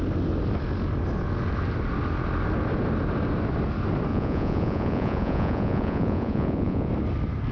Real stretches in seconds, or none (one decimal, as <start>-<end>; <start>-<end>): 0.0-4.1; 6.9-7.5